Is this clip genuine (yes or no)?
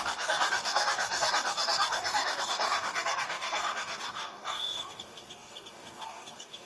no